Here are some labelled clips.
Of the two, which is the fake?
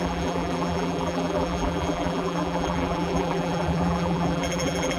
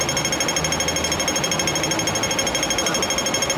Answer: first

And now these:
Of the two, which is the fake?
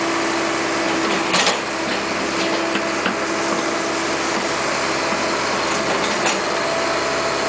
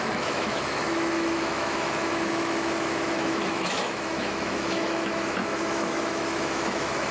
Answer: second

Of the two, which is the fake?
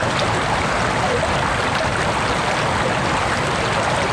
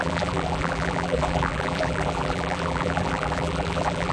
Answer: second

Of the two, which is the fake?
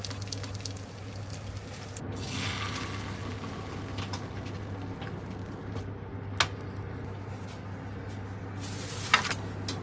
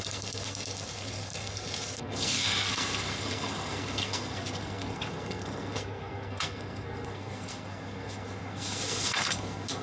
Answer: second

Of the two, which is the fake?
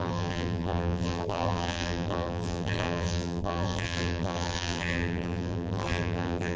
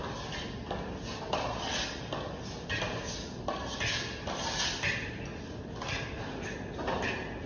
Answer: first